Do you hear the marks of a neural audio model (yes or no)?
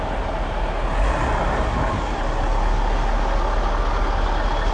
no